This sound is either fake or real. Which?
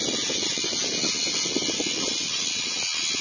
real